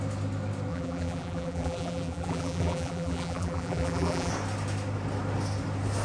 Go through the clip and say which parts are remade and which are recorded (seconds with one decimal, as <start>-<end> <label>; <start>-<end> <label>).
0.0-0.7 recorded; 0.7-4.3 remade; 4.3-6.0 recorded

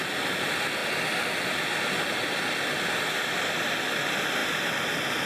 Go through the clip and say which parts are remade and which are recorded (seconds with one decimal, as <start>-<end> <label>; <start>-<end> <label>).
0.0-0.8 remade; 0.8-2.5 recorded; 2.5-4.4 remade; 4.4-5.3 recorded

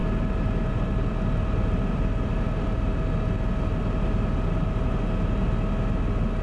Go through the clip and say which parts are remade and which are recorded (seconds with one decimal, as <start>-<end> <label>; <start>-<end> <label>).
0.0-0.7 recorded; 0.7-2.9 remade; 2.9-6.4 recorded

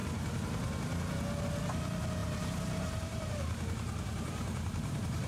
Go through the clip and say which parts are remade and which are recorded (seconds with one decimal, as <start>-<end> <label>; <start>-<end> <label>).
0.0-2.2 recorded; 2.2-5.3 remade

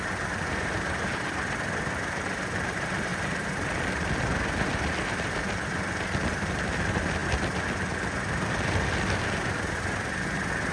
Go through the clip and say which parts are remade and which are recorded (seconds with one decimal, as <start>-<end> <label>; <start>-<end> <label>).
0.0-10.7 recorded

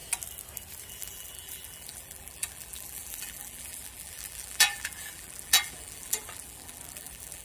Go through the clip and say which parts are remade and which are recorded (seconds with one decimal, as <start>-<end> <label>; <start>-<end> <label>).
0.0-0.9 recorded; 0.9-7.4 remade